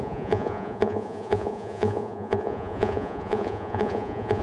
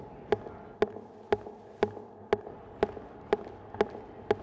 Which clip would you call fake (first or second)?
first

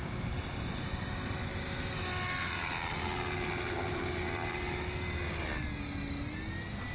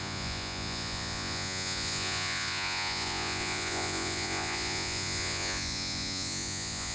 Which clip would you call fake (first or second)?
second